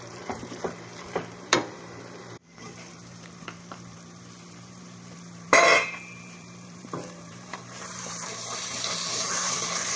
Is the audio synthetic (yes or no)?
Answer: yes